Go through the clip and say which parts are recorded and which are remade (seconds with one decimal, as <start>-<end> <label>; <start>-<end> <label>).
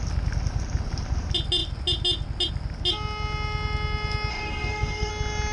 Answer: 0.0-4.3 recorded; 4.3-5.1 remade; 5.1-5.5 recorded